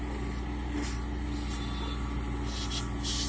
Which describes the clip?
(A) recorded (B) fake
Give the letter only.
A